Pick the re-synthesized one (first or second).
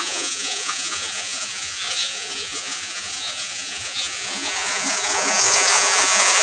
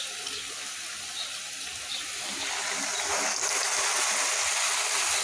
first